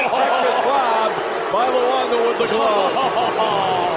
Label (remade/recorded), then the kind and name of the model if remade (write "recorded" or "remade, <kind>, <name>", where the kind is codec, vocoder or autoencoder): recorded